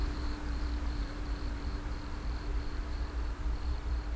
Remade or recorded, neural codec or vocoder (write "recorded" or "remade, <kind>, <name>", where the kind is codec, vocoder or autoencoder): remade, vocoder, BigVGAN v2